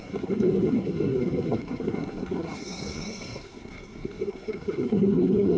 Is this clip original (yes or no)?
no